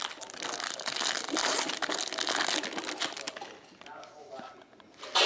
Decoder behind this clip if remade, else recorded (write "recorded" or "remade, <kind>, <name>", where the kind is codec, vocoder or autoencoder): recorded